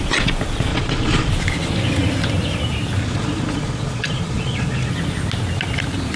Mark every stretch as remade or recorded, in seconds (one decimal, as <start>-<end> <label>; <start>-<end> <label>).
0.0-0.7 recorded; 0.7-1.3 remade; 1.3-3.0 recorded; 3.0-4.9 remade; 4.9-6.2 recorded